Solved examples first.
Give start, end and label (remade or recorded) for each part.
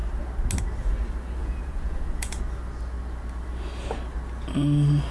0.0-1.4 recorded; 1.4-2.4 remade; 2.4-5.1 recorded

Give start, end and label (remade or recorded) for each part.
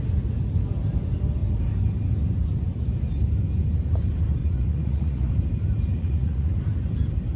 0.0-4.4 recorded; 4.4-5.3 remade; 5.3-5.9 recorded; 5.9-6.6 remade; 6.6-7.4 recorded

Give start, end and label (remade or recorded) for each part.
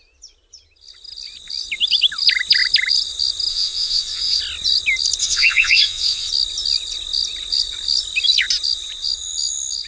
0.0-3.5 recorded; 3.5-4.4 remade; 4.4-5.2 recorded; 5.2-6.3 remade; 6.3-9.9 recorded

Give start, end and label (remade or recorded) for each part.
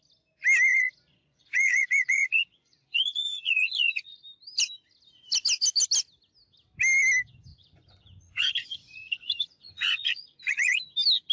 0.0-0.7 recorded; 0.7-4.2 remade; 4.2-7.5 recorded; 7.5-10.8 remade; 10.8-11.3 recorded